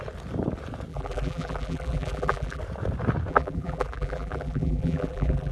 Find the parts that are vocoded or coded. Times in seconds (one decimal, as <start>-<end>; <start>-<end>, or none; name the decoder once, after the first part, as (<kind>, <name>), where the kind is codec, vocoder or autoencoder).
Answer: 0.9-2.6 (vocoder, BigVGAN v2); 3.3-5.5